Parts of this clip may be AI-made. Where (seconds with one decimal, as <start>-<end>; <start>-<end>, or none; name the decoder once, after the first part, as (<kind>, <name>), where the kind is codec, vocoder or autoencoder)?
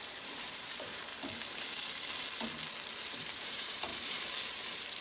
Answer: 0.0-1.1 (vocoder, BigVGAN v2); 3.0-5.0